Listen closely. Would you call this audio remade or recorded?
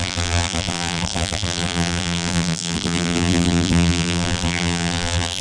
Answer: remade